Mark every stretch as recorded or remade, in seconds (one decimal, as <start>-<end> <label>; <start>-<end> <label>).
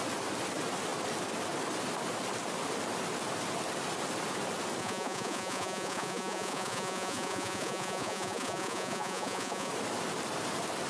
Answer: 0.0-4.8 recorded; 4.8-9.7 remade; 9.7-10.9 recorded